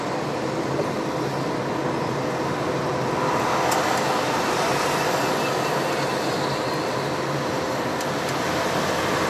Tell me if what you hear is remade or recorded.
recorded